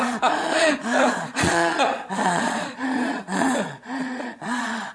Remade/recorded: remade